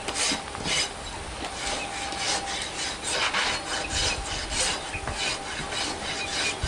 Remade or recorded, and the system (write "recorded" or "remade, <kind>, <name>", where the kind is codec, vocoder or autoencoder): recorded